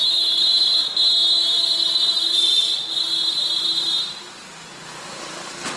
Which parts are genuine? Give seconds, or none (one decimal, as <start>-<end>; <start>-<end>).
0.0-5.8